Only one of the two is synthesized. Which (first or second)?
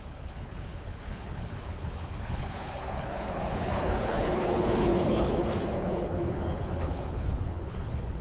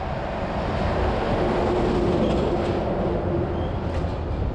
first